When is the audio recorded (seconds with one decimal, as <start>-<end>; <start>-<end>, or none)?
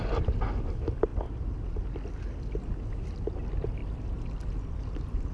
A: 0.0-5.3